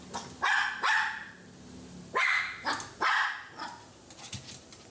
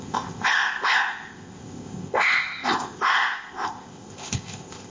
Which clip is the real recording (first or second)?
first